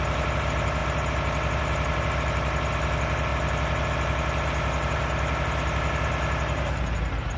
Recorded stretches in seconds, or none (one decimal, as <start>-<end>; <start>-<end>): 0.0-7.4